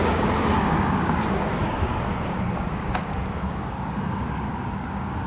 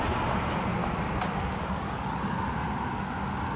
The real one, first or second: second